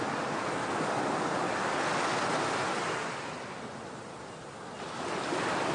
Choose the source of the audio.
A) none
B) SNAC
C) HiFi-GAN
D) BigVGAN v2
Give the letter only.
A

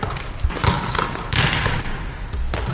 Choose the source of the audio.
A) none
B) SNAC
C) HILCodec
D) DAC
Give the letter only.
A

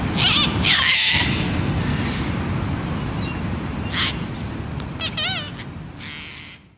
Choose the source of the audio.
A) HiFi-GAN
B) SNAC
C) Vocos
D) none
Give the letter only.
D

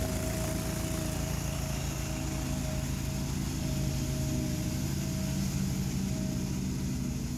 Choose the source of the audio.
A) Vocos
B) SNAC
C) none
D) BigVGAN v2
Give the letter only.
C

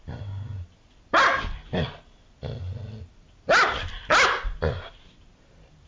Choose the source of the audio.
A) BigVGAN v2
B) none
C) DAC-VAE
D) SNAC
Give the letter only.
B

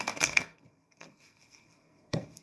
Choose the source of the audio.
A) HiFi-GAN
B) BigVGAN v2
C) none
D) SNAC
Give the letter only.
D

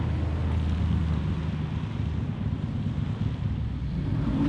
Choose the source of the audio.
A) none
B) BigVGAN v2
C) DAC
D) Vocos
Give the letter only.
A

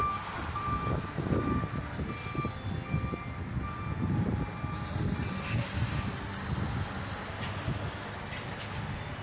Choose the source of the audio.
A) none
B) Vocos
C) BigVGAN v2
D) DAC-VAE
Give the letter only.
A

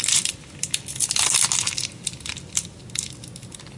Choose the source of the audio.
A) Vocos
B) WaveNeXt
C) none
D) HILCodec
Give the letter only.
C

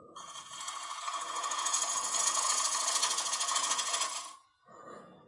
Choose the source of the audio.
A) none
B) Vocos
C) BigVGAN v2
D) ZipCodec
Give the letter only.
B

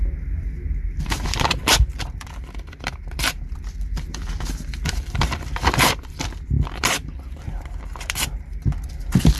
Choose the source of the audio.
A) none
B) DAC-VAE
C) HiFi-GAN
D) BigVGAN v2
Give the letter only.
D